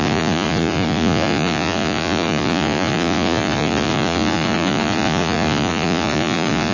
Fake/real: fake